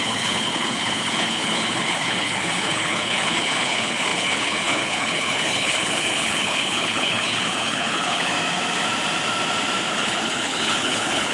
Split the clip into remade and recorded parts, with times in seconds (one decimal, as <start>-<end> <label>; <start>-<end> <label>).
0.0-8.3 remade; 8.3-9.9 recorded; 9.9-11.3 remade